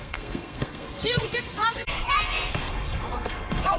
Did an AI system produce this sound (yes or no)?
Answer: yes